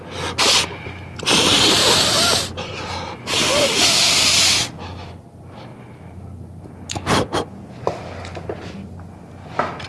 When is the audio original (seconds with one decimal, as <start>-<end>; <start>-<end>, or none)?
0.0-9.9